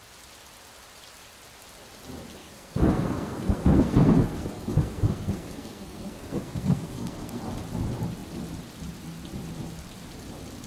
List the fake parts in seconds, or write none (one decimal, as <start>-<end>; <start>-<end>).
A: 2.4-7.4